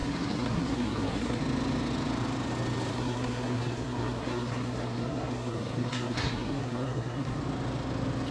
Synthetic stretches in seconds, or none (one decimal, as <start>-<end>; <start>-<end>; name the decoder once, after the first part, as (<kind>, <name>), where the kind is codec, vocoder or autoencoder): 0.0-1.4 (codec, SNAC); 2.9-7.4